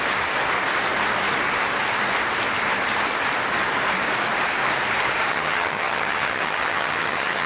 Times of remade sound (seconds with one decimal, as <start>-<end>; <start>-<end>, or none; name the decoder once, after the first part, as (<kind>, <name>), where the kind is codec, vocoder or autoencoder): 5.3-7.5 (vocoder, HiFi-GAN)